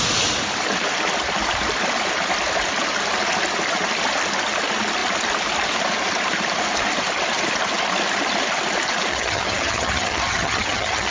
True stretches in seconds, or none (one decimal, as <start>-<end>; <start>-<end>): 0.0-9.1